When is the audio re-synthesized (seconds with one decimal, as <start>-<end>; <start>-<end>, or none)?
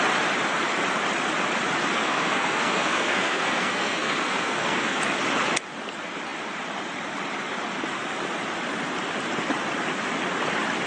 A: 1.9-5.0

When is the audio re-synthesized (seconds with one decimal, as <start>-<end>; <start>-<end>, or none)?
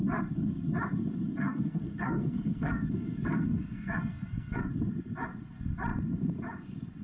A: 1.4-4.7